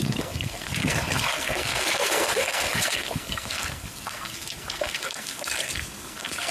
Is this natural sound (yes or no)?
no